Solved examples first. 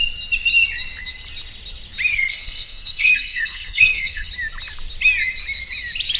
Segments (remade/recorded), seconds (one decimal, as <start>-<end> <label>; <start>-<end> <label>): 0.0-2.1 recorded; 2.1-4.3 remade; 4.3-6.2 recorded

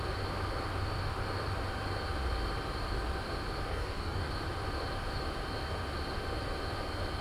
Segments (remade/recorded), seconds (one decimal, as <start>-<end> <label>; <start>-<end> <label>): 0.0-3.7 recorded; 3.7-4.3 remade; 4.3-7.2 recorded

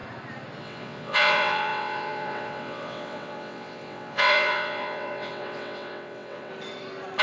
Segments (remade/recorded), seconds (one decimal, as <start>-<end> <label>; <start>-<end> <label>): 0.0-0.6 recorded; 0.6-6.5 remade; 6.5-7.2 recorded